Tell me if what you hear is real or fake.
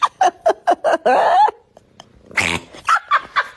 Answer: real